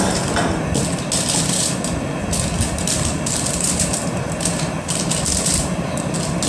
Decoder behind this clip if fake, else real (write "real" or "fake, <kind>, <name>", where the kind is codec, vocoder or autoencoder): real